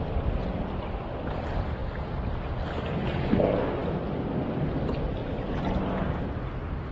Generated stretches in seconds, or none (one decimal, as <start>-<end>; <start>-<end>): 1.8-2.5